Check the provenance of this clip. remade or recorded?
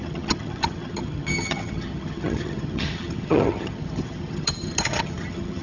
remade